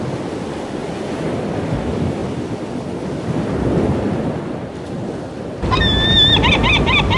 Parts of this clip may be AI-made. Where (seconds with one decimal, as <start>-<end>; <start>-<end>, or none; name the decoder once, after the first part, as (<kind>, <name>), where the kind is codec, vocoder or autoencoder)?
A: none